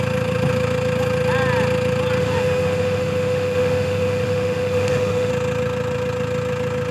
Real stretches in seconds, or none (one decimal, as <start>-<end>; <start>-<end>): 0.0-2.2; 5.3-6.9